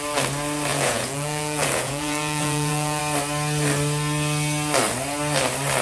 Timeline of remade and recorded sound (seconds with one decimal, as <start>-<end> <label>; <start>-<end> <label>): 0.0-0.7 recorded; 0.7-3.0 remade; 3.0-5.8 recorded